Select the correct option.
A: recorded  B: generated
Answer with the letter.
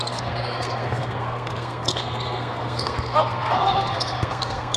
B